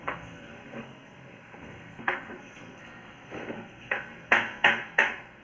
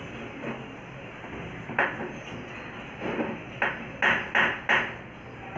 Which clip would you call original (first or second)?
second